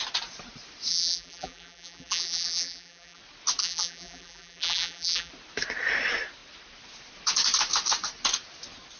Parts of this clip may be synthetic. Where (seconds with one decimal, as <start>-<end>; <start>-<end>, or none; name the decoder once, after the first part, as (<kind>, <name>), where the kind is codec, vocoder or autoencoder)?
0.9-3.2 (vocoder, BigVGAN v2); 3.6-5.3